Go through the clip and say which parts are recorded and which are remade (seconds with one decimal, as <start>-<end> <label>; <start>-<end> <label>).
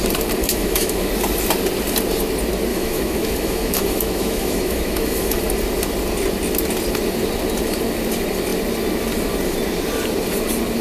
0.0-0.4 recorded; 0.4-1.1 remade; 1.1-2.7 recorded; 2.7-5.4 remade; 5.4-10.8 recorded